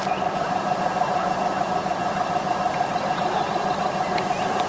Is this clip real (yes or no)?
no